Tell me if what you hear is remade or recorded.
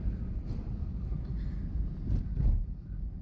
recorded